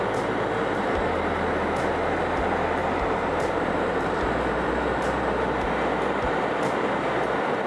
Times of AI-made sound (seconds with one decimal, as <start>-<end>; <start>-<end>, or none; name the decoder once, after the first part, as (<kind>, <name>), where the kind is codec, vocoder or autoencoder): 2.8-5.2 (vocoder, BigVGAN v2)